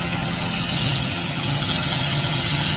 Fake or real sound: fake